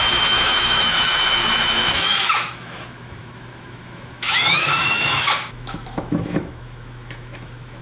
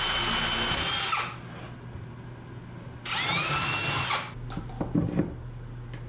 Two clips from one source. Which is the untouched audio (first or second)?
second